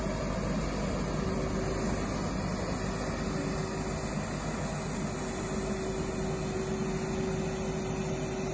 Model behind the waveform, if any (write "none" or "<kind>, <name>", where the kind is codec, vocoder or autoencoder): none